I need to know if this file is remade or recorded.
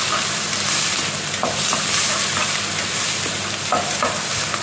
recorded